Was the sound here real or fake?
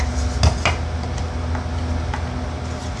real